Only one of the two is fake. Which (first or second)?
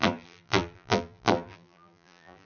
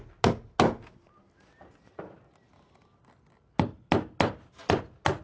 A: first